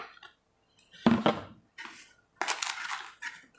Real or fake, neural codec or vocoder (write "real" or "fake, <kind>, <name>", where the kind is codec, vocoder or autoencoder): real